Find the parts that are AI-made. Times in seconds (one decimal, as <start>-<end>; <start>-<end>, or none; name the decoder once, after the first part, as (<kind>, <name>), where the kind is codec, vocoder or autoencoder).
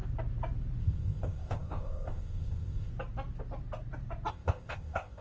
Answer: 0.8-2.9 (codec, ZipCodec); 4.3-5.2